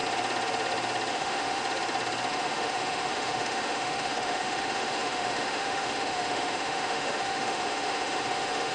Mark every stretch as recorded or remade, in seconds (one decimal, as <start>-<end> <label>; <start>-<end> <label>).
0.0-1.1 recorded; 1.1-1.6 remade; 1.6-2.3 recorded; 2.3-8.7 remade